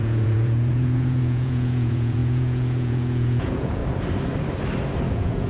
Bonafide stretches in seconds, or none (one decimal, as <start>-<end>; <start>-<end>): 3.8-5.1